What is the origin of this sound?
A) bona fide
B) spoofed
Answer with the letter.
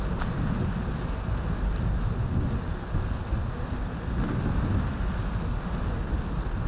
A